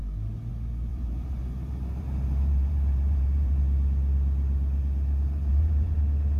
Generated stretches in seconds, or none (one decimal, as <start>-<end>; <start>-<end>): 0.9-3.6; 5.5-6.0